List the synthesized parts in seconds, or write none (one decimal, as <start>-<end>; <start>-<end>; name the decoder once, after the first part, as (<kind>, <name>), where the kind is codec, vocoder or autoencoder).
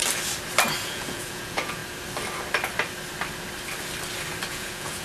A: 0.8-1.8 (vocoder, Vocos); 4.5-5.0